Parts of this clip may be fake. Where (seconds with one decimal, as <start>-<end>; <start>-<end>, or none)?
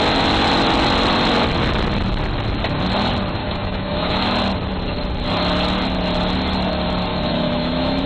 3.4-4.3; 7.1-8.1